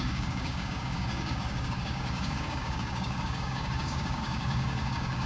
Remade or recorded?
remade